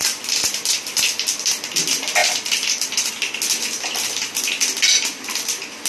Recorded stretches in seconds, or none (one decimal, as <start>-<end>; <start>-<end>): 0.0-2.2; 3.1-5.9